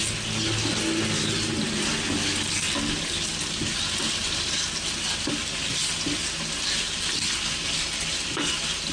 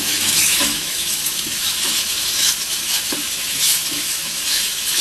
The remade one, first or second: second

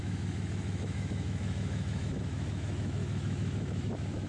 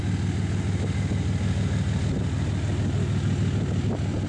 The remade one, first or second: first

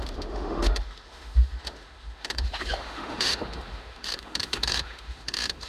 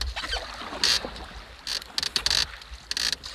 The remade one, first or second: first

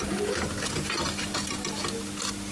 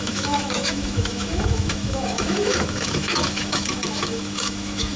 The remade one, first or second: second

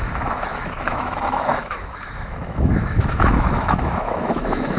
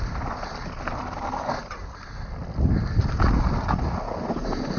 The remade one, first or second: first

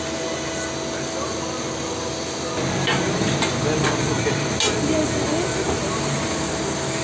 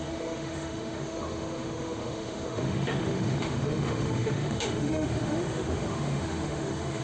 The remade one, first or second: second